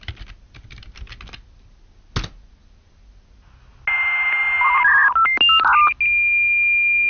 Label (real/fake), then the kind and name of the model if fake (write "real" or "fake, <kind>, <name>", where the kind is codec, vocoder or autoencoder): real